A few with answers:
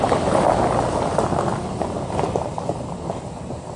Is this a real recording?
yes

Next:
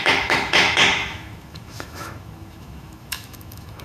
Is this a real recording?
no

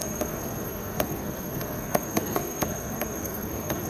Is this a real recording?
no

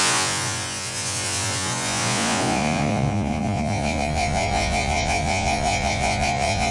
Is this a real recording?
no